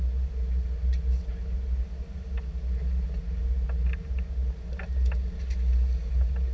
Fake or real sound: real